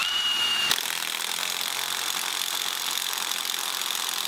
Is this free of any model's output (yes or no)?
no